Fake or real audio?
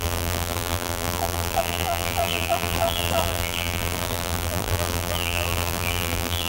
fake